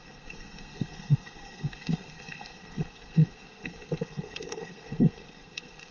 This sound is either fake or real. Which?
fake